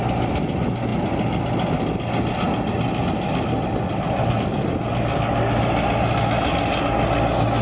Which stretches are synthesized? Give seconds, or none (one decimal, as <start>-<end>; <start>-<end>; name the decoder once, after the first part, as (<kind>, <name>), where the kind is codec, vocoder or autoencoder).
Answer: none